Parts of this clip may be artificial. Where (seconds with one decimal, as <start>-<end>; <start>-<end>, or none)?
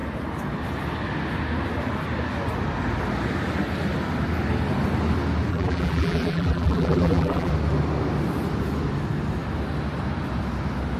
5.5-7.5